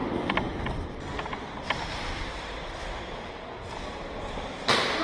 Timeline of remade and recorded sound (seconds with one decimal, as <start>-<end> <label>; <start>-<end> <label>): 0.0-5.0 recorded